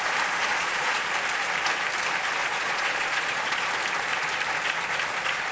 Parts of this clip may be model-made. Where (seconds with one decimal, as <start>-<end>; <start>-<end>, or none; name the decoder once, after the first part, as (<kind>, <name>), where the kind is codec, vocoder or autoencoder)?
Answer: 0.5-1.1 (vocoder, Vocos); 2.4-3.7